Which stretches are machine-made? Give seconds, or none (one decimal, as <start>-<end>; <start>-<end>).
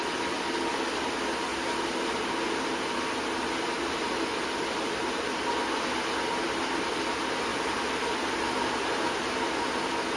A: none